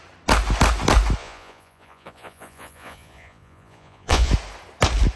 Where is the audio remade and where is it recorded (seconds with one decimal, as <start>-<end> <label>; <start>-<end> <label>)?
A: 0.0-1.2 recorded; 1.2-4.3 remade; 4.3-5.2 recorded